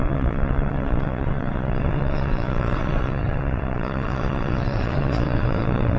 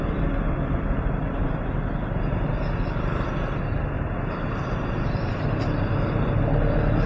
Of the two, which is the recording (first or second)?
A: second